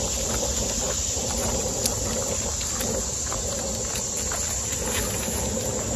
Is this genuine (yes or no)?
yes